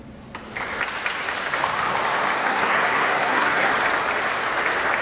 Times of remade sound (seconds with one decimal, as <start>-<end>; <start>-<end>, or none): 2.4-3.7